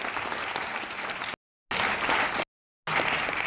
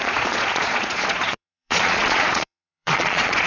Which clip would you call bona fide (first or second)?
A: first